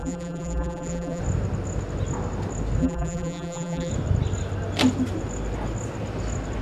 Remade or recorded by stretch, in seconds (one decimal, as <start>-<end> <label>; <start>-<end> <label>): 0.0-1.2 remade; 1.2-2.8 recorded; 2.8-3.9 remade; 3.9-6.6 recorded